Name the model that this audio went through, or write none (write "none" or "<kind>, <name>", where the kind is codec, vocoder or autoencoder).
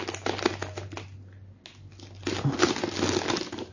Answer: none